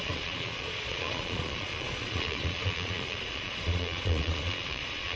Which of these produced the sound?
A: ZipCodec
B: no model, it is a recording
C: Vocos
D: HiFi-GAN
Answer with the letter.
C